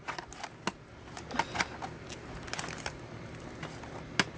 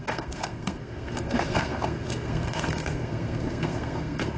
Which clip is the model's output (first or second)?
second